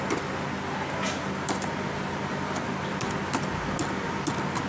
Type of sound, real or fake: real